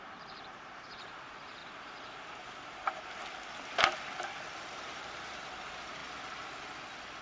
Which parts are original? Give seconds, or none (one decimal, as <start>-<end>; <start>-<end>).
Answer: 1.6-4.7; 6.0-7.2